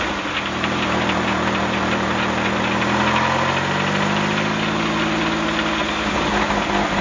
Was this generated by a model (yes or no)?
no